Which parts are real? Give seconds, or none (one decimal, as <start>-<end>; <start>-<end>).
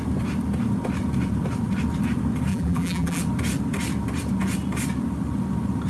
0.0-2.5; 3.2-5.9